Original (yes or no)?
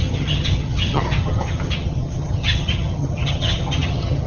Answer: no